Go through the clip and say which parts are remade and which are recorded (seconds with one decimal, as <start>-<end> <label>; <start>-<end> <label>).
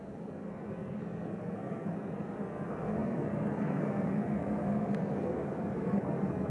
0.0-6.5 remade